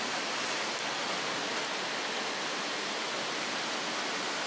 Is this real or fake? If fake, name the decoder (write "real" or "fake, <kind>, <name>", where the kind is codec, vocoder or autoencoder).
real